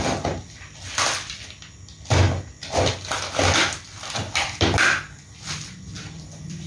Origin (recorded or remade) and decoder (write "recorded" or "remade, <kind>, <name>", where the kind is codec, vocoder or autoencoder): recorded